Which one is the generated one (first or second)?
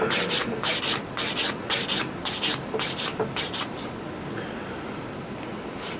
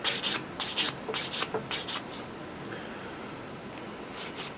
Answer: first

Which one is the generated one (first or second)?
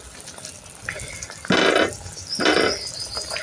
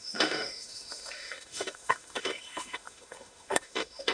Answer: second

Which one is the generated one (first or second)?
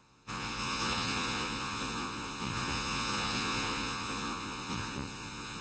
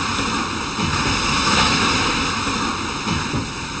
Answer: first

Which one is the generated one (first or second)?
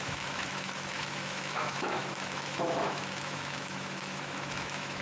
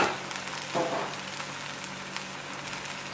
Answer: first